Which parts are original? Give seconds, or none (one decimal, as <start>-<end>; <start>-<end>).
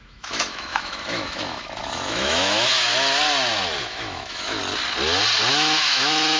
2.9-3.8; 4.6-5.5